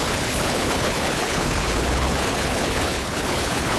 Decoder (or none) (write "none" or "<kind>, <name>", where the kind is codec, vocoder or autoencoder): codec, HILCodec